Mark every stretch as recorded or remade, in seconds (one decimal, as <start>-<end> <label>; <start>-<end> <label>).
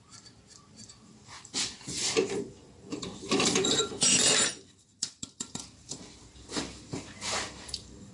0.0-8.1 remade